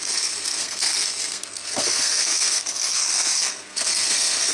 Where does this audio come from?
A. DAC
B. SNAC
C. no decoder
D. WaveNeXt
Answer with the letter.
B